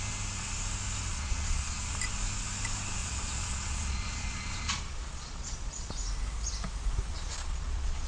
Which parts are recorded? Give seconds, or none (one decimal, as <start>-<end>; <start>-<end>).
0.0-1.1; 2.0-3.0; 5.9-7.1